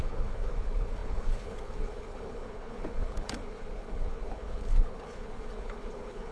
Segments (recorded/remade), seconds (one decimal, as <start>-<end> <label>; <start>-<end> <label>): 0.0-6.3 remade